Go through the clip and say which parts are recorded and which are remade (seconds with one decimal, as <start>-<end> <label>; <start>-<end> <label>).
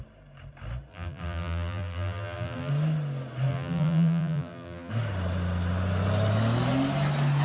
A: 0.0-0.9 recorded; 0.9-2.7 remade; 2.7-3.5 recorded; 3.5-4.9 remade; 4.9-7.4 recorded